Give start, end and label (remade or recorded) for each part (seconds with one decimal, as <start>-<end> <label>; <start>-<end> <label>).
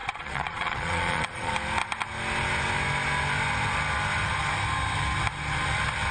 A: 0.0-1.5 remade; 1.5-6.1 recorded